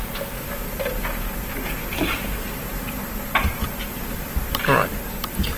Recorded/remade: recorded